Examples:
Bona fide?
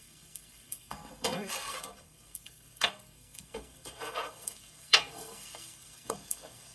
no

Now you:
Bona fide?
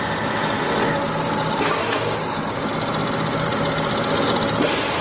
yes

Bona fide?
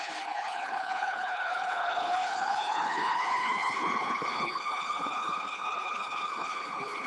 no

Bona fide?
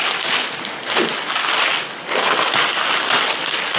no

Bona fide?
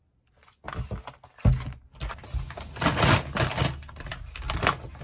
yes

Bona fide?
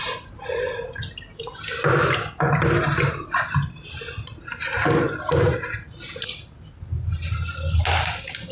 yes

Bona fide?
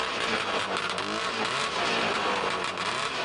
yes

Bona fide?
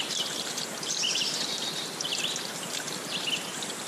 yes